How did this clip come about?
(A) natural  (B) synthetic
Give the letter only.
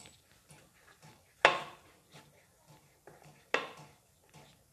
A